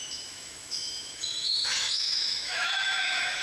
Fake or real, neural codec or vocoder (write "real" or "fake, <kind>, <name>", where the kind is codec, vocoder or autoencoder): fake, autoencoder, DAC-VAE